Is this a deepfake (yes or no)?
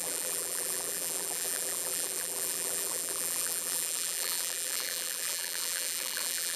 yes